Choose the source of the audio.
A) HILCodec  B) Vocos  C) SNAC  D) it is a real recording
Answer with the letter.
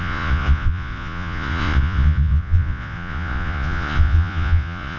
B